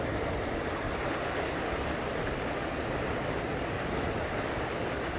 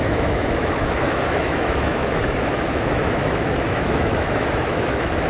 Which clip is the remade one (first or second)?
second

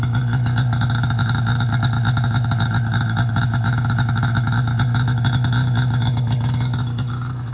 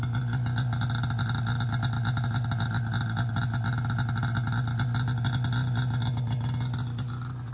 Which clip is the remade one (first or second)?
first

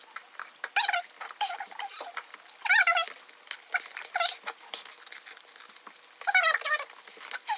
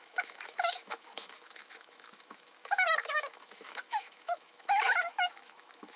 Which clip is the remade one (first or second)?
second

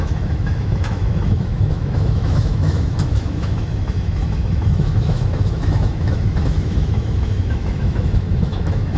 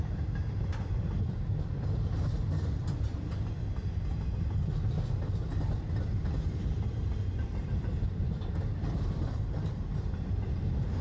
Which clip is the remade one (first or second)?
first